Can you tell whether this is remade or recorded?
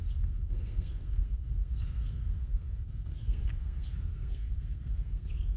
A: remade